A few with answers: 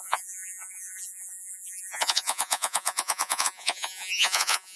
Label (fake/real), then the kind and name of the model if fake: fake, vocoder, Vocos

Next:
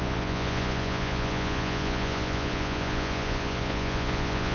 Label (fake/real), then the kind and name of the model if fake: fake, vocoder, Vocos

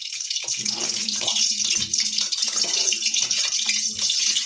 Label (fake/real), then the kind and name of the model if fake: fake, vocoder, Vocos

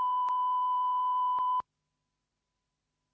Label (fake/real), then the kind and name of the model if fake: real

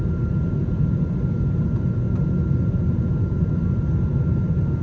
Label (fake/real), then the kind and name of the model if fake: real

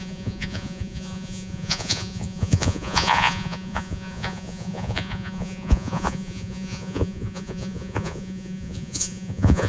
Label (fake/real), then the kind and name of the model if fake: fake, vocoder, Vocos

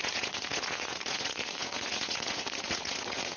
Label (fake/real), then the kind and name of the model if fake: fake, vocoder, Vocos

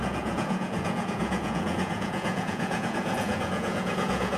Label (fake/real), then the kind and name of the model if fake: fake, vocoder, Vocos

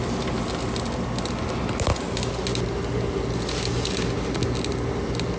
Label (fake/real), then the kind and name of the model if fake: real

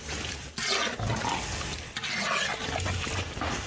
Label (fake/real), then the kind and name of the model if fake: real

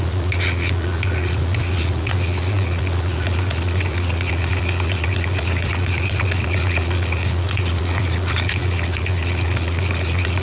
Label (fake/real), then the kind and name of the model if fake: fake, vocoder, Vocos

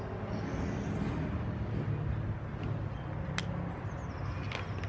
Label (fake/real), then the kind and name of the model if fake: real